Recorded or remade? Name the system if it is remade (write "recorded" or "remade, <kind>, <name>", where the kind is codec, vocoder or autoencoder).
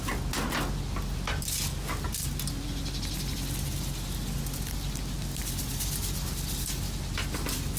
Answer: recorded